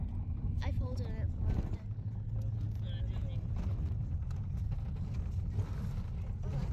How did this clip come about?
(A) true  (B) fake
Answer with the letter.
A